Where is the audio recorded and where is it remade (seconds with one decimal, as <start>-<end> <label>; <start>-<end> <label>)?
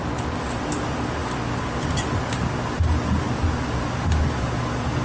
0.0-5.0 recorded